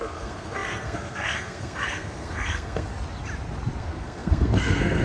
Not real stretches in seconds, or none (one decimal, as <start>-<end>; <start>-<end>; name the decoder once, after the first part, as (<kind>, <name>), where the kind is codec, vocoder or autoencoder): 0.0-2.9 (codec, SNAC); 3.8-5.0